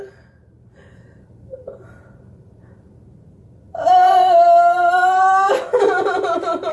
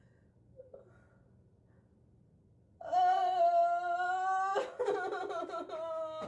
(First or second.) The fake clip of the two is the first